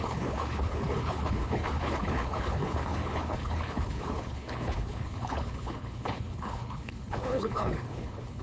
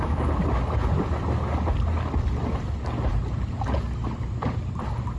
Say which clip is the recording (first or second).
second